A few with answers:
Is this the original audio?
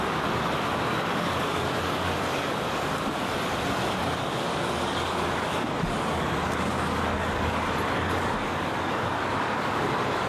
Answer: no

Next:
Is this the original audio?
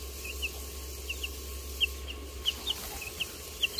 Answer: yes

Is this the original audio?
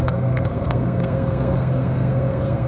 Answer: no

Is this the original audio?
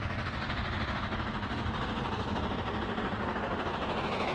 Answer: yes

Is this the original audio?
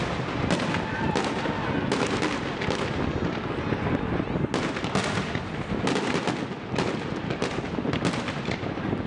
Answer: yes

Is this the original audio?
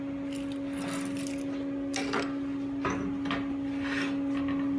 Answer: yes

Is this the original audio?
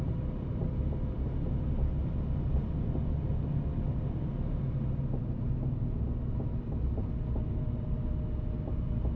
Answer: yes